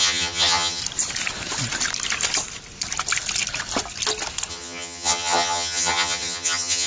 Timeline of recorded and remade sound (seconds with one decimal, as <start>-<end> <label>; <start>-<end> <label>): 0.0-0.8 remade; 0.8-4.5 recorded; 4.5-6.9 remade